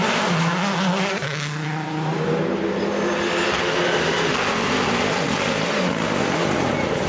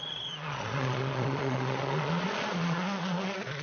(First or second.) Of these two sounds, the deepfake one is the second